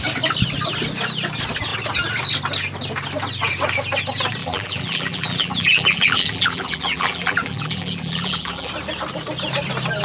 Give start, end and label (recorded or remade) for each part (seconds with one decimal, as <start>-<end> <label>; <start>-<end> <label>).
0.0-4.4 recorded; 4.4-8.7 remade; 8.7-10.0 recorded